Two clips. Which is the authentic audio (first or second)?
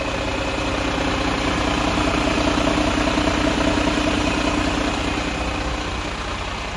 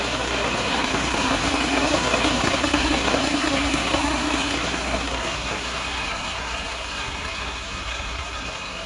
first